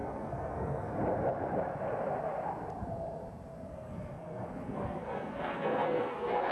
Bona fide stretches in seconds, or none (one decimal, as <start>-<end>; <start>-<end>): 0.9-3.7